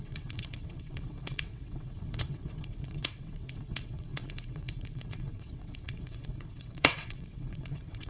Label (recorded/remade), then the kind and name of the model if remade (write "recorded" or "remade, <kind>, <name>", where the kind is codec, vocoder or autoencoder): remade, vocoder, WaveNeXt